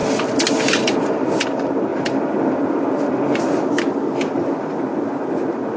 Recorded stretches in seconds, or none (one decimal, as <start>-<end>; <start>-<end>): 0.0-5.8